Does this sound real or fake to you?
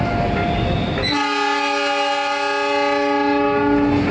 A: real